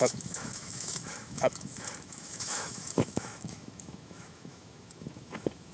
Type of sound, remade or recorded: remade